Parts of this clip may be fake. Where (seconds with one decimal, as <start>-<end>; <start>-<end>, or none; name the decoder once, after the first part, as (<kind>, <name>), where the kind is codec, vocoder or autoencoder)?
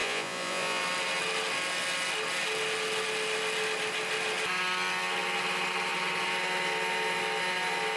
0.0-0.8 (vocoder, Vocos)